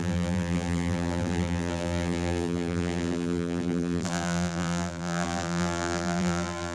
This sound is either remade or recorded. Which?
remade